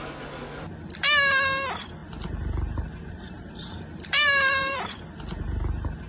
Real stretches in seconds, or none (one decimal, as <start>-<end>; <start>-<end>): 0.0-2.0